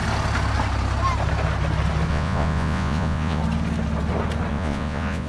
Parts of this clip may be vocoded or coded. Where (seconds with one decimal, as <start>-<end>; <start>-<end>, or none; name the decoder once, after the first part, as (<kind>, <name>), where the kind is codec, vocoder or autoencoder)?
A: 2.1-3.4 (vocoder, Vocos); 4.5-5.3